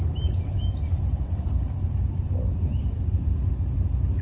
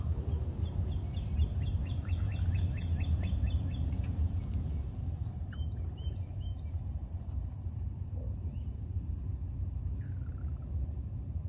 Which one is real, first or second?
first